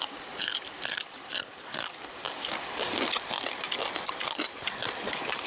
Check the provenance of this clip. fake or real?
real